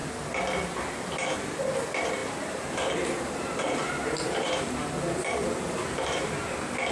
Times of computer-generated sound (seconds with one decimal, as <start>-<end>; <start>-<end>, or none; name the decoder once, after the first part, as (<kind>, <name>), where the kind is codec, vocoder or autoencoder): 2.2-6.3 (vocoder, BigVGAN v2)